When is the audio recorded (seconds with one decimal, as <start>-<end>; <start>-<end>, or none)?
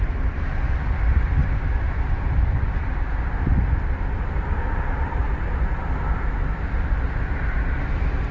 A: 1.4-4.4; 5.2-5.8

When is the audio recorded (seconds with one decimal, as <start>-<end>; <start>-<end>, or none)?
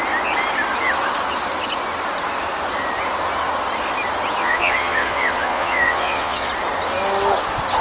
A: 0.0-4.4; 6.5-7.8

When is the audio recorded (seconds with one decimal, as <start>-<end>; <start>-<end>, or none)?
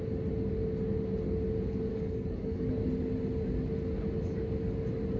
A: 0.0-1.9; 2.7-5.2